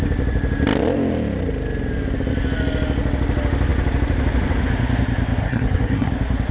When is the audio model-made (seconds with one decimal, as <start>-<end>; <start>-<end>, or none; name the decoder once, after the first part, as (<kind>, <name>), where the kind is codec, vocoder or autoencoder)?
5.4-6.1 (codec, SNAC)